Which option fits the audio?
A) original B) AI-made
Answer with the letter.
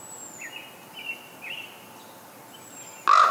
A